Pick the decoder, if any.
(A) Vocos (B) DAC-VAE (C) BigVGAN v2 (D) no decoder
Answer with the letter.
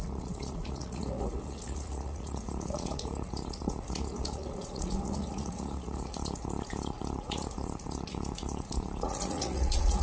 A